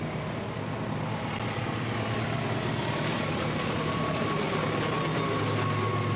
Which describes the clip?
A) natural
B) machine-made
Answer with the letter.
A